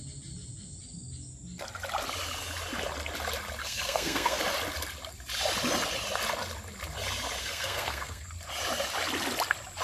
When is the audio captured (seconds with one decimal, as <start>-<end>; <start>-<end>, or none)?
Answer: 0.0-3.6; 4.4-7.4; 8.3-9.8